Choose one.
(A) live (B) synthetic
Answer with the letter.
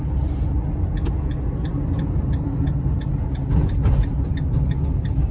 A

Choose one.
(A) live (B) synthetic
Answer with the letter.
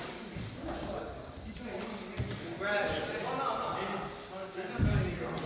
A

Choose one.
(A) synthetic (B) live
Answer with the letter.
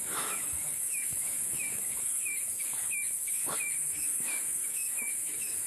A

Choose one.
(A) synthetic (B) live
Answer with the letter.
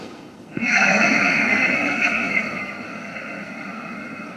A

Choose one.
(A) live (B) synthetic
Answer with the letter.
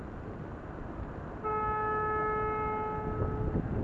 A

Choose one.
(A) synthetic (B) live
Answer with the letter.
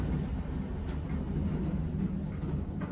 B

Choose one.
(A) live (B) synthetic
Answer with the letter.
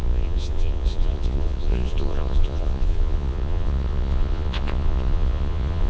B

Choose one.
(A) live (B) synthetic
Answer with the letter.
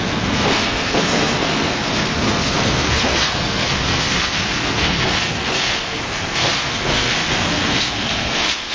B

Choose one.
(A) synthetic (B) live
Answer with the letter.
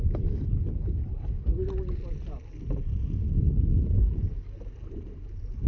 B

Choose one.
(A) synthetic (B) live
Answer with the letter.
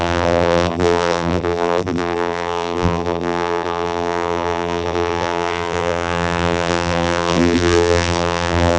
A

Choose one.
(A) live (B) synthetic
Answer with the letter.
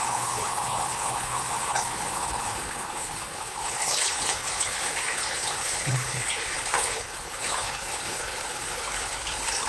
B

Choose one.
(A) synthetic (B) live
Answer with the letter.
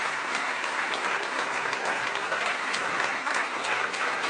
A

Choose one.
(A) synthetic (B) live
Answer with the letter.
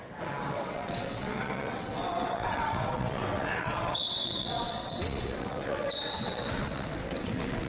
A